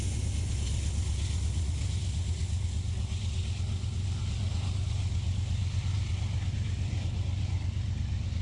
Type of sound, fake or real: real